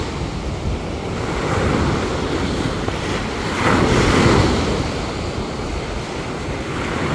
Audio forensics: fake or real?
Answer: real